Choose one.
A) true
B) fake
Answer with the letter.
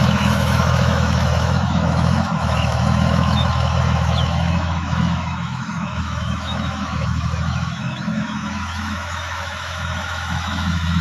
B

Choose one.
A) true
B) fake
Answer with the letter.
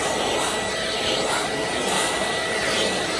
A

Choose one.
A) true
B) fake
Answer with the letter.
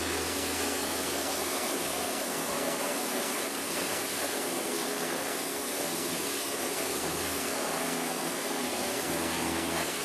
B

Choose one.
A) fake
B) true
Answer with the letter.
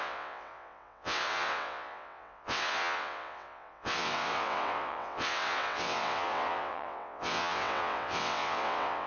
A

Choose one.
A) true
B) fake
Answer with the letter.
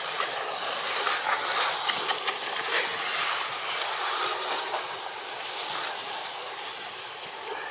A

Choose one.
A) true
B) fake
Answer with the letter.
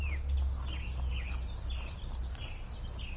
A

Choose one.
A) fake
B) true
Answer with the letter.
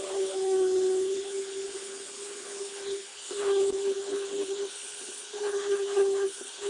A